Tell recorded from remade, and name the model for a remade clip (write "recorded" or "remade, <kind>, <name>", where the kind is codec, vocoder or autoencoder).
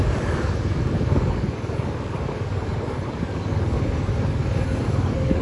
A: remade, codec, DAC